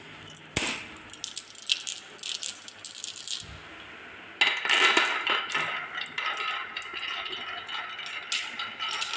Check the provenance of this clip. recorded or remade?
recorded